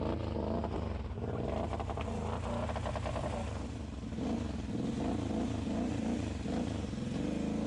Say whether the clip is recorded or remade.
recorded